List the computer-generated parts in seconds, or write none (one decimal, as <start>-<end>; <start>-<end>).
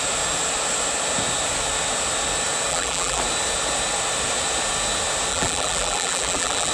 2.7-3.2; 5.3-6.7